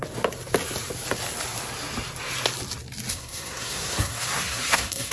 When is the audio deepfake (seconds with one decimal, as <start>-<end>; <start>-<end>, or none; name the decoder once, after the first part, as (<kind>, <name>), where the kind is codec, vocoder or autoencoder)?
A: 3.1-5.1 (codec, SNAC)